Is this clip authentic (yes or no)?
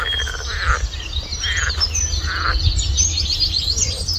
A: yes